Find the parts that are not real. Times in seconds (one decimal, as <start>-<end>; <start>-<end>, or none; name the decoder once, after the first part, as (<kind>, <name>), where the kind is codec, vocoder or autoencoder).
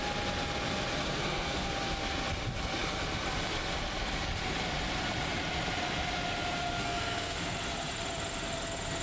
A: 1.2-1.7 (codec, SNAC); 6.8-7.4